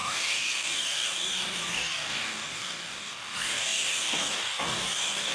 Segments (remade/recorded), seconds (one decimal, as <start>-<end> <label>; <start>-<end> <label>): 0.0-5.3 remade